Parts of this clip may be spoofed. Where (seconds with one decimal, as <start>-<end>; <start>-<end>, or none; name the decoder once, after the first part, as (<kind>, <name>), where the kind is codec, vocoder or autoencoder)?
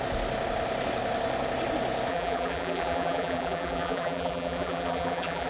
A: 2.1-5.5 (vocoder, BigVGAN v2)